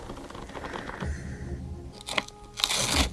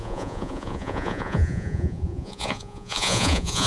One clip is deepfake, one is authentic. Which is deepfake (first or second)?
second